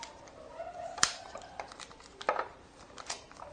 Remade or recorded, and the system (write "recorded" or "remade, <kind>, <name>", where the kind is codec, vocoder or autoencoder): remade, vocoder, BigVGAN v2